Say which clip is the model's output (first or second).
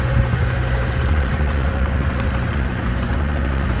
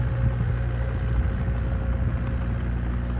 first